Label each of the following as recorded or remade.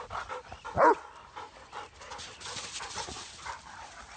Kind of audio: recorded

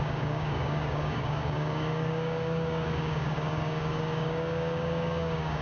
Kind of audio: remade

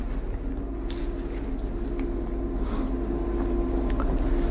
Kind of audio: recorded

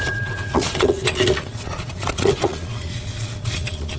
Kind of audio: remade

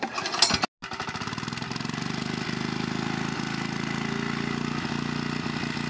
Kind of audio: recorded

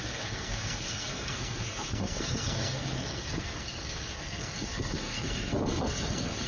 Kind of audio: remade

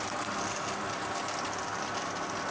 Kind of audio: remade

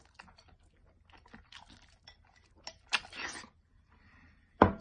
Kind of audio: recorded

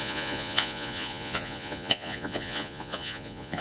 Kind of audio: remade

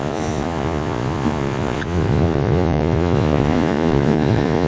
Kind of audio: remade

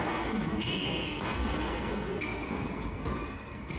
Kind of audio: remade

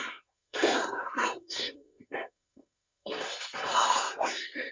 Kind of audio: remade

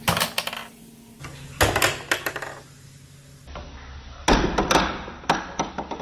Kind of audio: recorded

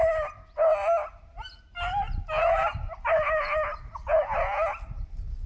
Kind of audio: recorded